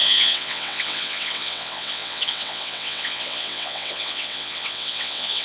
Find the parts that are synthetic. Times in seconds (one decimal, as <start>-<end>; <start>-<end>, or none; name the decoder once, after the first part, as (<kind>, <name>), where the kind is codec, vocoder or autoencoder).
0.0-5.4 (vocoder, WaveNeXt)